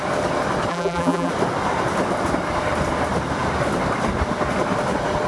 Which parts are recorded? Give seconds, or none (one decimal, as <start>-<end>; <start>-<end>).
0.0-0.7; 1.3-5.3